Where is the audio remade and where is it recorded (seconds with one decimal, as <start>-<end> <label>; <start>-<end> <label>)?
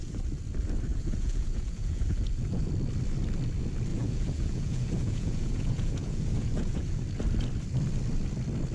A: 0.0-0.9 recorded; 0.9-2.7 remade; 2.7-3.9 recorded; 3.9-7.0 remade; 7.0-8.7 recorded